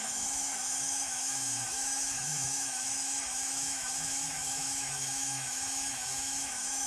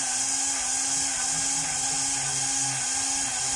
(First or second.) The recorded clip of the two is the second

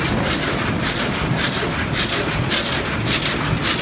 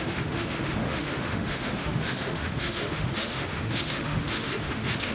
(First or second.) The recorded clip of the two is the first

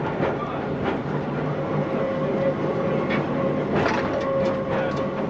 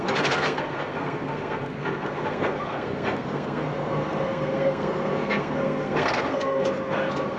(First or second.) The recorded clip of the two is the first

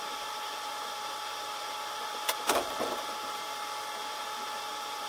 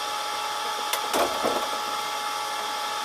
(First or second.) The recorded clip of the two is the second